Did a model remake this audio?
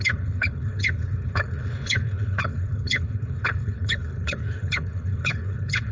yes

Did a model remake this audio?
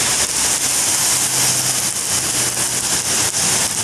no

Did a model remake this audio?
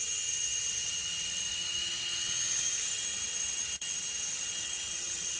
yes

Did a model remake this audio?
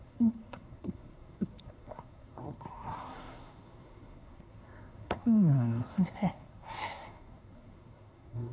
yes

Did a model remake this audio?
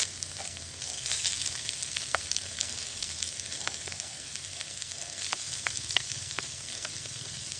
yes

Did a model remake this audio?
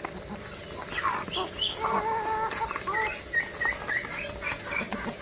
no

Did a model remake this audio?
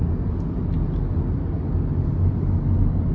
no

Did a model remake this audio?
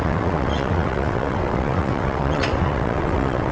yes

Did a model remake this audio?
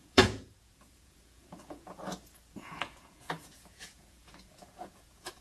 yes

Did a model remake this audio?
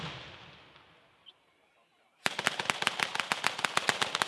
no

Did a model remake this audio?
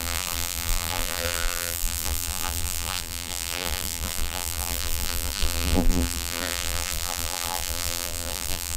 yes